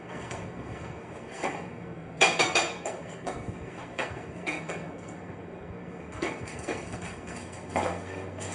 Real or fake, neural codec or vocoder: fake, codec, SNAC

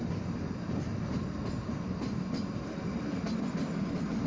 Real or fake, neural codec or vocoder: real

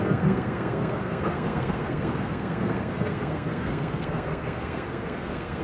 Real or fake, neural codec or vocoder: fake, codec, SNAC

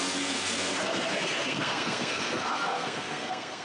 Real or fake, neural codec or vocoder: fake, codec, SNAC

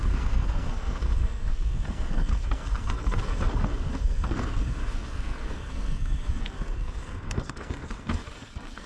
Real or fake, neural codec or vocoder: fake, codec, SNAC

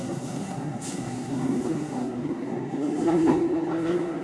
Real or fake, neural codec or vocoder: fake, codec, SNAC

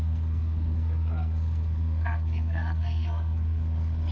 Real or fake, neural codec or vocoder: fake, codec, SNAC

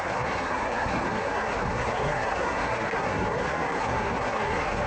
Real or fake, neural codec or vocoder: fake, codec, SNAC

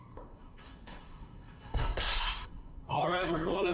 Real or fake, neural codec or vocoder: fake, codec, SNAC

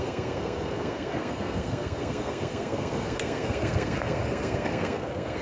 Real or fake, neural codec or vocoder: fake, codec, SNAC